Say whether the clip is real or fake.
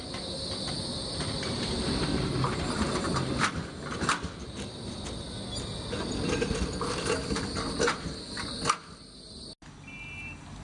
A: real